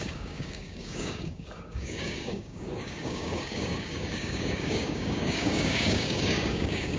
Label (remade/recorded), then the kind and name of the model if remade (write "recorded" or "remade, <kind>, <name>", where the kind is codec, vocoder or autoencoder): remade, codec, DAC